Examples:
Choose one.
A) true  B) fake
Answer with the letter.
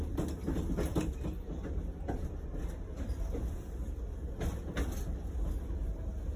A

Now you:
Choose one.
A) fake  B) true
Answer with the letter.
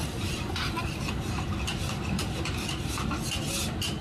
B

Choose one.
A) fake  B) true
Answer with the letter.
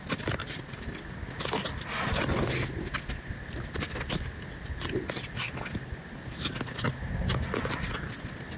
B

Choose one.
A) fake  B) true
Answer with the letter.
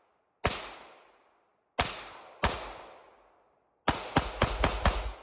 B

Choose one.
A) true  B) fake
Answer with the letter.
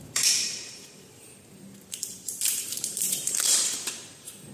B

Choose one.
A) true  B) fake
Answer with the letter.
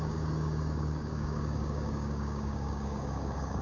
B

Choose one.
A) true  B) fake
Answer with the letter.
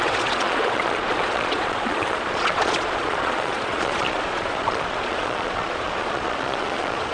B